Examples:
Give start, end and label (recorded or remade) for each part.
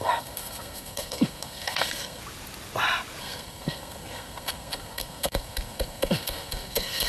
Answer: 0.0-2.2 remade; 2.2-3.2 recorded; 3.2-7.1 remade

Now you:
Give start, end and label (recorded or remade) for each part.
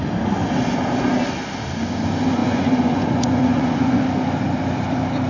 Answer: 0.0-2.4 recorded; 2.4-4.0 remade; 4.0-5.3 recorded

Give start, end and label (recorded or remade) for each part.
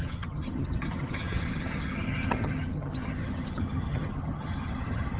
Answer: 0.0-5.2 remade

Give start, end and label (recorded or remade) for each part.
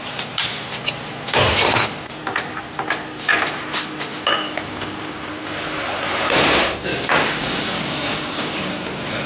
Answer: 0.0-6.9 recorded; 6.9-8.7 remade; 8.7-9.3 recorded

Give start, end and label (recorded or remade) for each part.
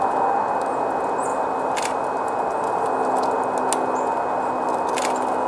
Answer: 0.0-1.3 recorded; 1.3-3.2 remade; 3.2-5.5 recorded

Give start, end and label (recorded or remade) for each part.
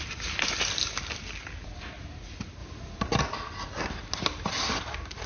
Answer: 0.0-5.3 recorded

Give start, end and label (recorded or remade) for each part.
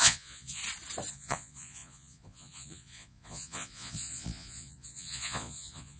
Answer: 0.0-0.6 remade; 0.6-1.1 recorded; 1.1-6.0 remade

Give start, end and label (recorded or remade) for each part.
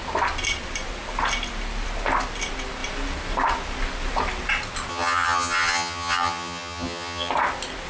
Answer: 0.0-4.9 recorded; 4.9-7.3 remade; 7.3-7.9 recorded